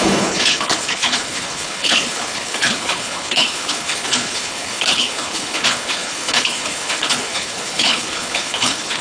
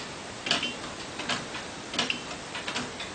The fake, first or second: first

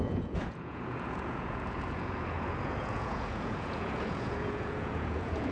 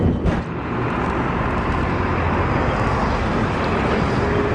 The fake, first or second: first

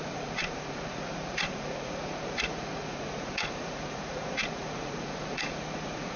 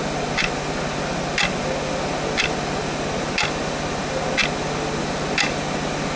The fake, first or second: first